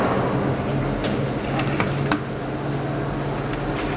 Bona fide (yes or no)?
yes